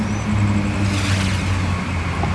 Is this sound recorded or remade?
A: recorded